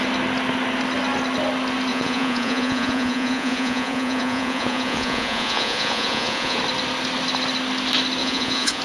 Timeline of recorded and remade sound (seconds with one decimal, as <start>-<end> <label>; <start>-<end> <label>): 0.0-1.9 recorded; 1.9-6.6 remade; 6.6-8.2 recorded; 8.2-8.8 remade